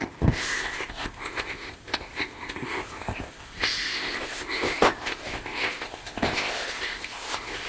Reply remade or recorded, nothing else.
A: remade